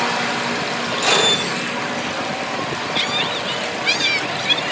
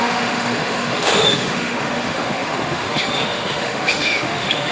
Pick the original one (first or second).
first